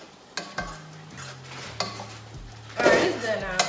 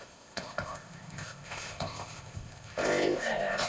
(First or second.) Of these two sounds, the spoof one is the second